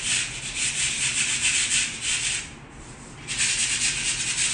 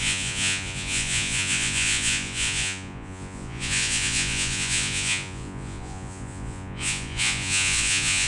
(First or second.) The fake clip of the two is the second